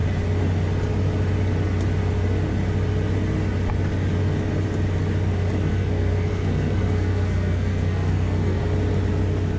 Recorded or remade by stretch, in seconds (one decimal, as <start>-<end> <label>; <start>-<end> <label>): 0.0-5.7 recorded; 5.7-8.6 remade; 8.6-9.6 recorded